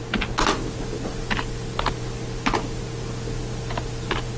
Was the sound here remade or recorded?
recorded